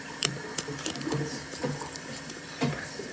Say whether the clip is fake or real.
fake